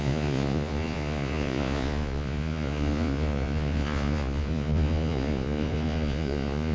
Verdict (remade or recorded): remade